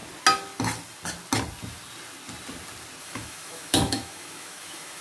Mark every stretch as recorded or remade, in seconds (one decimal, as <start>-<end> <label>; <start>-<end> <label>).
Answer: 0.0-3.0 recorded; 3.0-5.0 remade